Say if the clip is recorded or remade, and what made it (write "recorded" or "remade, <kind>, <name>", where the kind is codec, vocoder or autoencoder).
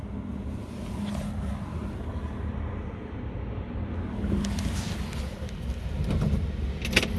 recorded